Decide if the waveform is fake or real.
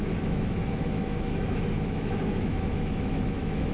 fake